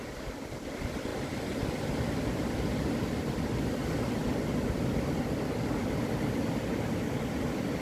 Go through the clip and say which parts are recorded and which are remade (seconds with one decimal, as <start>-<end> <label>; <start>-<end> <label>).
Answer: 0.0-7.8 recorded